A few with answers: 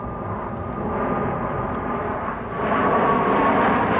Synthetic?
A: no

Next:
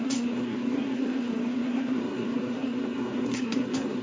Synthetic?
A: yes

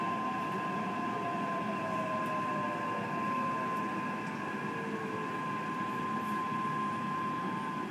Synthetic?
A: no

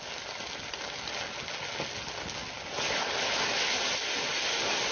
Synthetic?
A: no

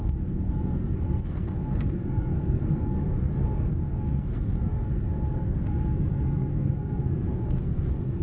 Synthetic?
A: yes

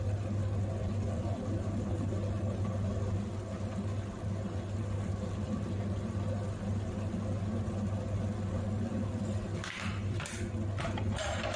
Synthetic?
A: no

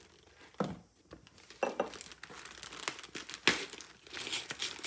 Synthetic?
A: no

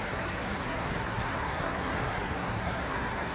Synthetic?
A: yes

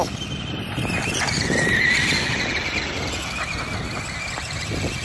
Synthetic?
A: no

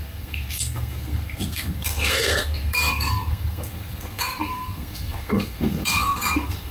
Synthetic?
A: yes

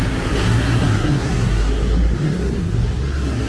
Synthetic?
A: yes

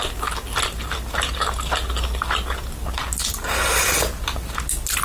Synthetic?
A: no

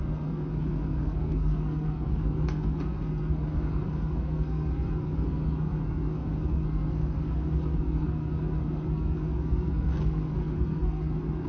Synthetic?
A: yes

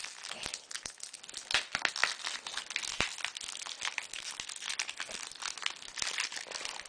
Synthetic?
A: no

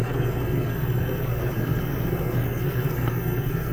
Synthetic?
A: yes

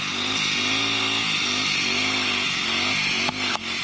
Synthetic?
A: no